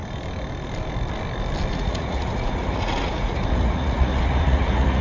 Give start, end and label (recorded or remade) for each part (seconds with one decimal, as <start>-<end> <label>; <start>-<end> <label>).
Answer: 0.0-1.7 recorded; 1.7-5.0 remade